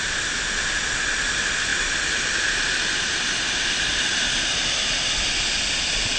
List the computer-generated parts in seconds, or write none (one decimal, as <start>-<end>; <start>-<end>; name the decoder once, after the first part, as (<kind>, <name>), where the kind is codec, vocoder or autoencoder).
none